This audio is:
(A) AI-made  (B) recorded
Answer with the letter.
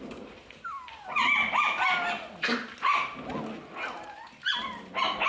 B